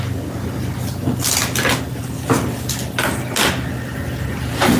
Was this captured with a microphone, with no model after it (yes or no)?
yes